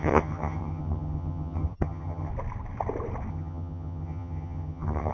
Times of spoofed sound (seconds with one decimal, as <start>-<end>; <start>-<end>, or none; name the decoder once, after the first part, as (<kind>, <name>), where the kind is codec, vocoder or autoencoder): 0.0-2.3 (vocoder, HiFi-GAN); 3.3-5.1